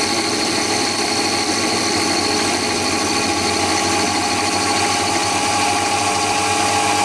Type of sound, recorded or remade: recorded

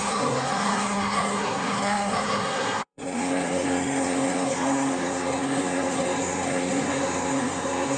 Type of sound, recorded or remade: remade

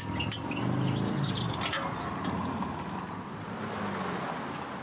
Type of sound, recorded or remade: recorded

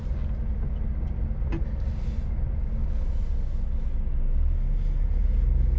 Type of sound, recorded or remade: recorded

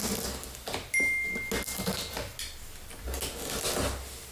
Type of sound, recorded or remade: recorded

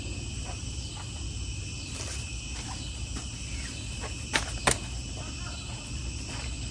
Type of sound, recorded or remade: recorded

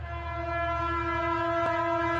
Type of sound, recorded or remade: recorded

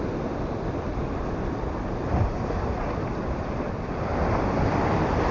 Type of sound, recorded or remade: recorded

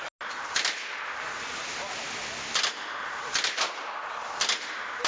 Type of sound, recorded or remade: recorded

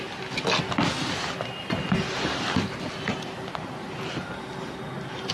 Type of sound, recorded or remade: recorded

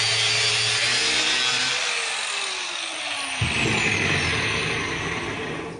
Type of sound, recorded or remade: recorded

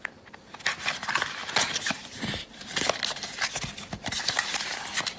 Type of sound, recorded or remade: recorded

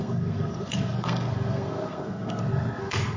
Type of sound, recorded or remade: remade